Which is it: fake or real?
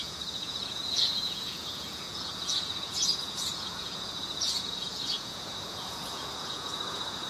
fake